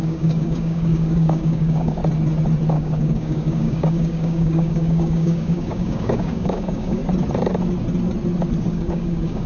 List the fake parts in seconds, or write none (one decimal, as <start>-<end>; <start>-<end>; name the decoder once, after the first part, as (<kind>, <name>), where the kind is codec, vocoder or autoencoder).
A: 0.0-2.0 (codec, DAC); 2.7-7.0; 8.7-9.5